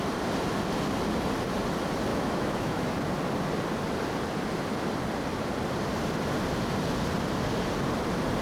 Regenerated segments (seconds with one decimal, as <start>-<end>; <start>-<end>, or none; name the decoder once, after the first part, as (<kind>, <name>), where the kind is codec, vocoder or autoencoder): 2.1-2.9 (autoencoder, DAC-VAE)